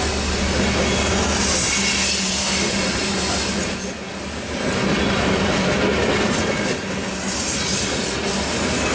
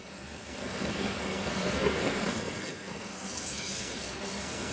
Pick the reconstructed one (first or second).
second